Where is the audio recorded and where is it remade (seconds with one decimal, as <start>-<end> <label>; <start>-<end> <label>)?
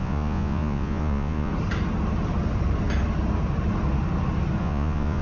0.0-1.5 remade; 1.5-4.6 recorded; 4.6-5.2 remade